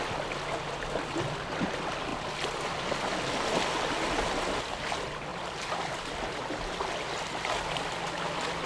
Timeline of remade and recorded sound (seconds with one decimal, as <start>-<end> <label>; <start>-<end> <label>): 0.0-8.7 recorded